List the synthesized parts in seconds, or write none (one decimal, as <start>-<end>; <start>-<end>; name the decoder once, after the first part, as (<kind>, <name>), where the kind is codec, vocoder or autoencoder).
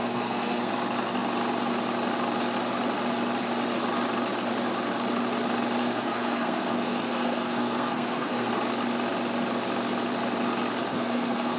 0.0-0.7 (codec, SNAC); 5.8-8.5; 10.9-11.6